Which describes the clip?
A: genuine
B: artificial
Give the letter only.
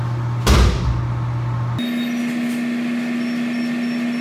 A